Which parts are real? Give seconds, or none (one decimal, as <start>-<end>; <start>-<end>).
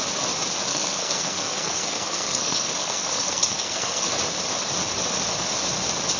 0.0-0.7; 4.2-6.2